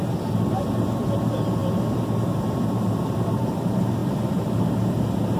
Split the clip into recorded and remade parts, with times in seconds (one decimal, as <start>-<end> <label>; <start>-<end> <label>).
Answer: 0.0-5.4 recorded